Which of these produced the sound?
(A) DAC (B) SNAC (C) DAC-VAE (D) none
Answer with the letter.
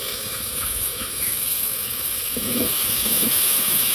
C